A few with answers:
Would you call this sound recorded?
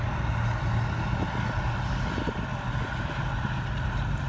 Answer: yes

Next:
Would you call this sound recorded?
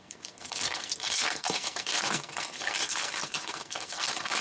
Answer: no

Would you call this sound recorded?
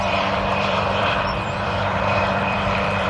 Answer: no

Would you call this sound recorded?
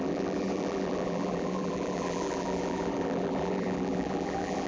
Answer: no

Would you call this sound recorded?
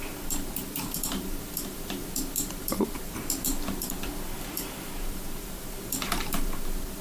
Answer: no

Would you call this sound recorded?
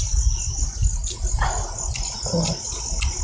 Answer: yes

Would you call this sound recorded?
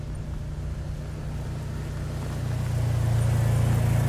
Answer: yes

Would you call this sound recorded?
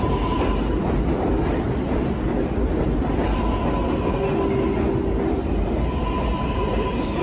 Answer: yes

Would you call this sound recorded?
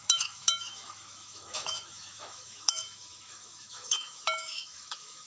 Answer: no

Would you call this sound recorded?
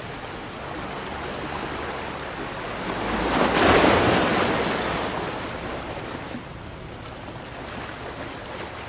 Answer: yes